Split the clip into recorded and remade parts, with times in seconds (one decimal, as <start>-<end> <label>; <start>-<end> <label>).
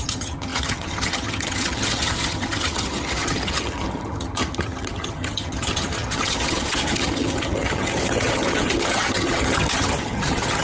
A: 0.0-10.6 remade